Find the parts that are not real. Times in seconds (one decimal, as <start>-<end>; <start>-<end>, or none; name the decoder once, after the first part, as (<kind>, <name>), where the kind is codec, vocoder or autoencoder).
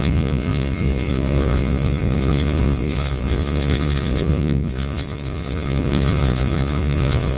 0.0-7.4 (vocoder, Vocos)